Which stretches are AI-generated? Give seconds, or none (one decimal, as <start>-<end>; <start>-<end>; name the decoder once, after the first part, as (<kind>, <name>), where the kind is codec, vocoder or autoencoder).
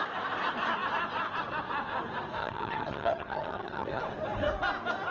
2.4-4.0 (vocoder, HiFi-GAN)